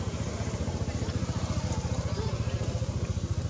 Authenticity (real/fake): real